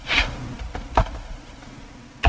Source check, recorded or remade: recorded